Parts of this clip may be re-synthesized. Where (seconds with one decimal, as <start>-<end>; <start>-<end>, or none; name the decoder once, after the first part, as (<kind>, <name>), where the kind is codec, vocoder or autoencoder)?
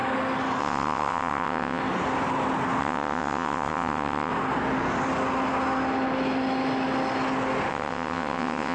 0.6-1.8 (vocoder, WaveNeXt); 2.8-4.3; 7.7-8.7